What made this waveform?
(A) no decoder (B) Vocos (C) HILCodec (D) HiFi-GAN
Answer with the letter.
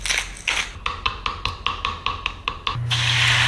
A